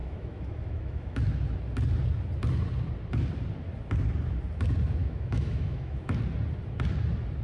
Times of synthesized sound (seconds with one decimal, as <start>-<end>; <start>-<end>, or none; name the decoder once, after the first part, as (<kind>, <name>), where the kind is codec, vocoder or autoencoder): 0.0-1.2 (autoencoder, DAC-VAE); 5.0-6.2